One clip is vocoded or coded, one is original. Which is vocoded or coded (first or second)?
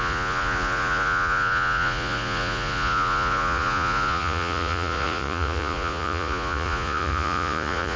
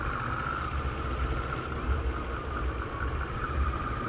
first